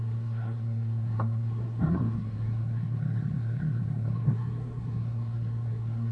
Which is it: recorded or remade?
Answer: remade